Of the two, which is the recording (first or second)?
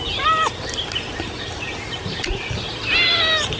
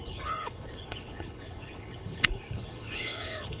first